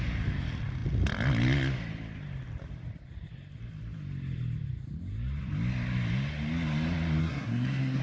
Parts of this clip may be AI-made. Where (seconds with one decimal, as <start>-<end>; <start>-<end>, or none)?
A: 7.2-8.0